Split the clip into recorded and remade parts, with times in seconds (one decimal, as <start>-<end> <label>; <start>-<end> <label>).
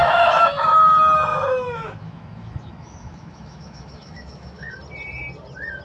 0.0-0.7 remade; 0.7-1.3 recorded; 1.3-4.8 remade; 4.8-5.8 recorded